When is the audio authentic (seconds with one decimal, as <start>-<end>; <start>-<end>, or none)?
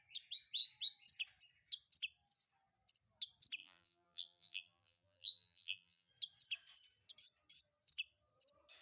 0.0-3.6; 6.1-8.8